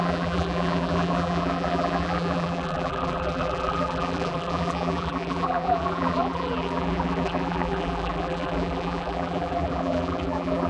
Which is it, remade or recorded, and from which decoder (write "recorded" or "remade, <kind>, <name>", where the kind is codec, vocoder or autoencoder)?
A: remade, vocoder, BigVGAN v2